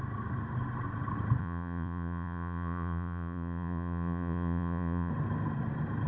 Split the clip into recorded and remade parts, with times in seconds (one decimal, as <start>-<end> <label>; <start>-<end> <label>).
0.0-1.4 recorded; 1.4-5.1 remade; 5.1-6.1 recorded